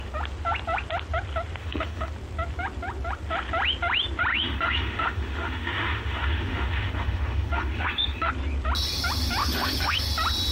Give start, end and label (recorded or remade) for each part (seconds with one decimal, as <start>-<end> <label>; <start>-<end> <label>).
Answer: 0.0-1.6 recorded; 1.6-2.1 remade; 2.1-4.3 recorded; 4.3-8.3 remade; 8.3-9.4 recorded; 9.4-10.0 remade; 10.0-10.5 recorded